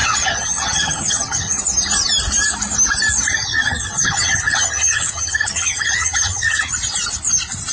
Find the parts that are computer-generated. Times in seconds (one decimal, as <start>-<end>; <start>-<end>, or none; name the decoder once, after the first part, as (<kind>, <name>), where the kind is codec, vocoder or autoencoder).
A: 0.0-1.6 (vocoder, HiFi-GAN); 3.3-6.7